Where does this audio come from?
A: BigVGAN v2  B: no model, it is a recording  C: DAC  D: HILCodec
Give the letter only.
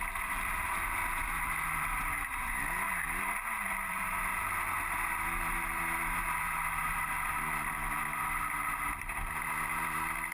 A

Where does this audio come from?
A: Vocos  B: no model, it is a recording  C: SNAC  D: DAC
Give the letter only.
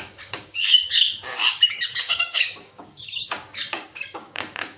D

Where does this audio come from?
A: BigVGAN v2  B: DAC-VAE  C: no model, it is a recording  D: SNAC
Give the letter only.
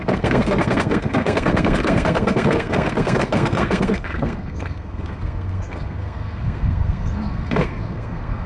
D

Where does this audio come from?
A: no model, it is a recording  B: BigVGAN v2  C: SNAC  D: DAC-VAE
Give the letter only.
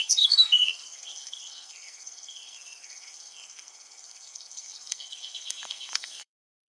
C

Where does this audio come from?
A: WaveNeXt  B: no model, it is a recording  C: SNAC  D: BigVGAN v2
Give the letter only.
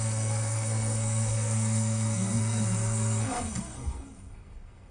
C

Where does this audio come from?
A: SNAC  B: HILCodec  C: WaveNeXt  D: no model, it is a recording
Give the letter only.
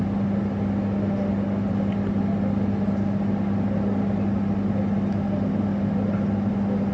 D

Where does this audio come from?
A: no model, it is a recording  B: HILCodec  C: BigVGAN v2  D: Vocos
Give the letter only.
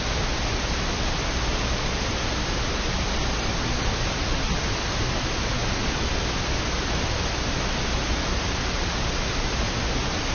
A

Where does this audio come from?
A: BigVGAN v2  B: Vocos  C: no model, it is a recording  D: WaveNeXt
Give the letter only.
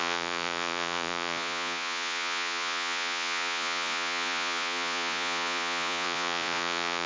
B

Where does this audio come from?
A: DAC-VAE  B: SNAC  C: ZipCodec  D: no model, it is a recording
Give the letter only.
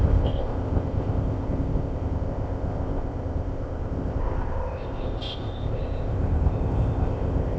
C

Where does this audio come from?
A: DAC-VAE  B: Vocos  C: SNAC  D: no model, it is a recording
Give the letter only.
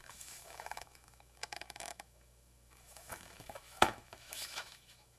A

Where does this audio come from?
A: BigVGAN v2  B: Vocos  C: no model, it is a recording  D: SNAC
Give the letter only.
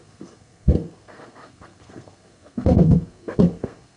D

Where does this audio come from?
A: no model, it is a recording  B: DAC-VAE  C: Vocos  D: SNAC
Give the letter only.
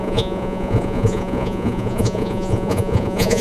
C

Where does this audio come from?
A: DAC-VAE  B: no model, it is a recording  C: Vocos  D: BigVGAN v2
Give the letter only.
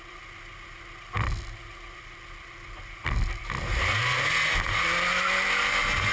B